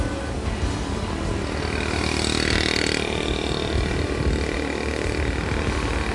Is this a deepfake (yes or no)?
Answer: no